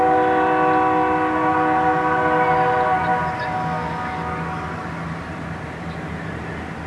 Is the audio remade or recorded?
recorded